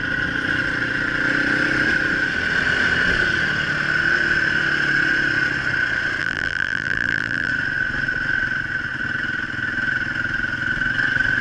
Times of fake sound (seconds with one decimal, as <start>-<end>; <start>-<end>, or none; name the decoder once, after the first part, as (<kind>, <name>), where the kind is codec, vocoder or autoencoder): 6.2-7.5 (vocoder, BigVGAN v2)

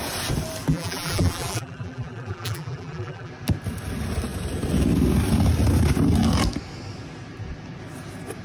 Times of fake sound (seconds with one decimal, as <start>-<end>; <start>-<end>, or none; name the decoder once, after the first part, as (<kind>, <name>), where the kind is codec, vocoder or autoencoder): 0.7-3.3 (vocoder, BigVGAN v2)